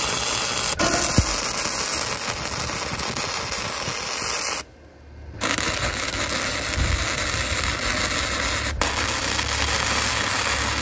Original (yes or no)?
yes